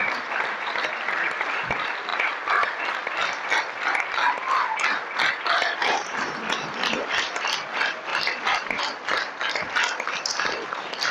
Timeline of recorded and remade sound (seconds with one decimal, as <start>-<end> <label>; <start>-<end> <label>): 0.0-5.8 recorded; 5.8-6.4 remade; 6.4-8.1 recorded; 8.1-8.8 remade; 8.8-11.1 recorded